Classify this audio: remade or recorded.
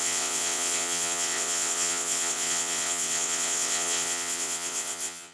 remade